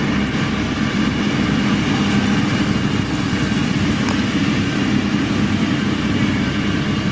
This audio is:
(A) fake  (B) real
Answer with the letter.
B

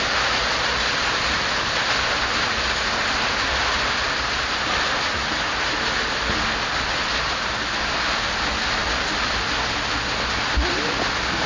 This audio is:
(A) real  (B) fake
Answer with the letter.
A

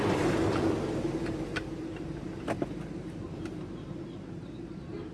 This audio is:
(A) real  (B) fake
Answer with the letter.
B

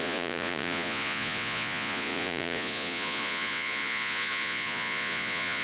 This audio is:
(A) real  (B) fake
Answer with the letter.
B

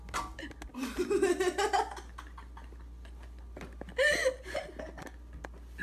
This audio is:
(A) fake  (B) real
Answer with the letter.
B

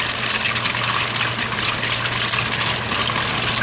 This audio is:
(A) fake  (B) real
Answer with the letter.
B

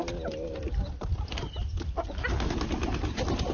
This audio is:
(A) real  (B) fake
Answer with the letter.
A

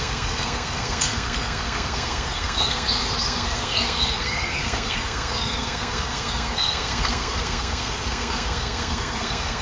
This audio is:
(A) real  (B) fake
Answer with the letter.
B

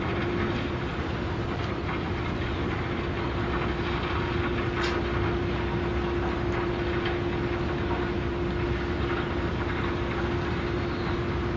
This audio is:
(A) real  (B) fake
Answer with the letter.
A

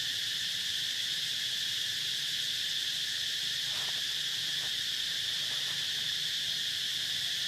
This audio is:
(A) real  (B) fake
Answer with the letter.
B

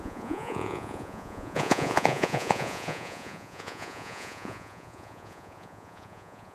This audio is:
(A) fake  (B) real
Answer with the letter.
A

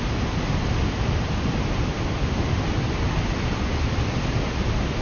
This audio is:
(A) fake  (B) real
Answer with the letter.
B